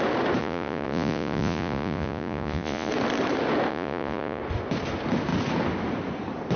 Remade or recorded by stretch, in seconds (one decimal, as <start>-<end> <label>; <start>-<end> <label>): 0.0-0.4 recorded; 0.4-2.9 remade; 2.9-3.7 recorded; 3.7-4.4 remade; 4.4-6.6 recorded